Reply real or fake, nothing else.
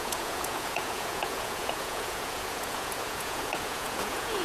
fake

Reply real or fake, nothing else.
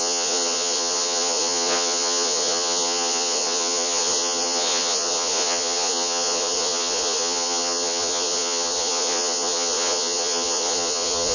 fake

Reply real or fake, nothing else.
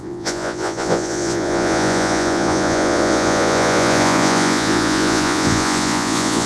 fake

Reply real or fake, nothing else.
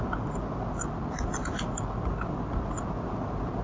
real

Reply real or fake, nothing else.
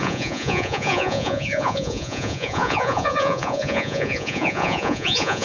fake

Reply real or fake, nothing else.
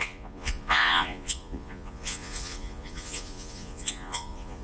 fake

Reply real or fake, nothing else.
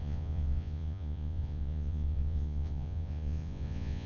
fake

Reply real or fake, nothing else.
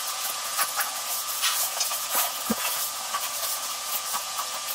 fake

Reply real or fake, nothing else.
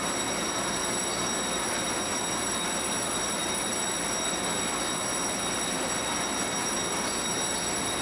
real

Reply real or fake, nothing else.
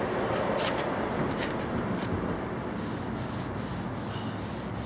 real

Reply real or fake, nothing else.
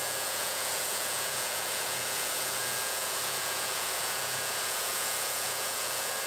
fake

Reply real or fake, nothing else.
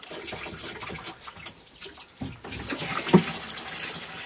real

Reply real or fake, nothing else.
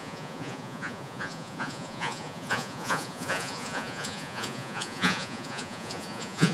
fake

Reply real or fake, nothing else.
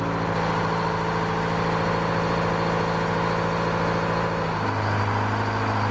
real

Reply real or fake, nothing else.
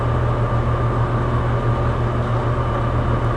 real